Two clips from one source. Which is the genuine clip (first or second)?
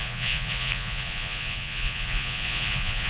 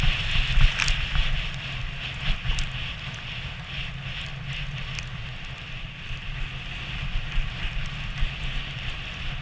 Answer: second